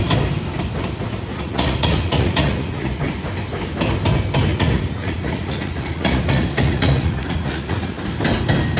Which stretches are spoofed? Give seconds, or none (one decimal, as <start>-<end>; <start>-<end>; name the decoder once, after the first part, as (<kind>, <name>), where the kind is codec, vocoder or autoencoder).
1.3-3.0 (vocoder, Vocos); 4.5-8.0